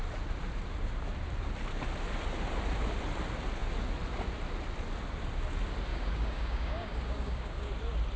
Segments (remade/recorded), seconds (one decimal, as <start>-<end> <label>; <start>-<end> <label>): 0.0-5.9 recorded; 5.9-7.7 remade; 7.7-8.2 recorded